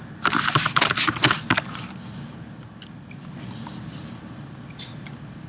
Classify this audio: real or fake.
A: real